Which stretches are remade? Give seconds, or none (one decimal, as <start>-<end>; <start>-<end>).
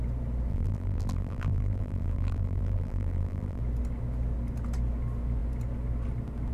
0.5-3.6